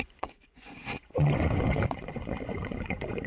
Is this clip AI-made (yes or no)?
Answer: yes